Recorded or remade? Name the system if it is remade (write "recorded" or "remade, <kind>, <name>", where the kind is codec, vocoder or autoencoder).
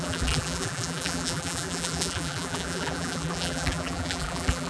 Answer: remade, vocoder, BigVGAN v2